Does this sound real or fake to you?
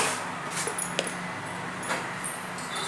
real